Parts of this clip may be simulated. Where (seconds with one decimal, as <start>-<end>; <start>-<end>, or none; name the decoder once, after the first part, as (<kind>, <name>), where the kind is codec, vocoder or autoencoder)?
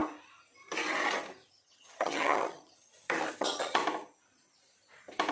1.5-2.9 (vocoder, HiFi-GAN); 3.4-3.8